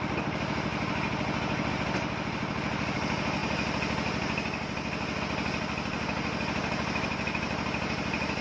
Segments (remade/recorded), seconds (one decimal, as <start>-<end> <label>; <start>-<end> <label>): 0.0-8.4 recorded